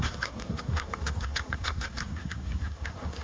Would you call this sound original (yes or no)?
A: no